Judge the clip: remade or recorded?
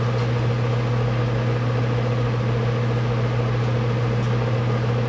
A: recorded